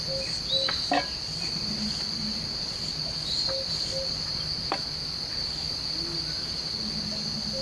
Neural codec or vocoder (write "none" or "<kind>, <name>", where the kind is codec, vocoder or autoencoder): none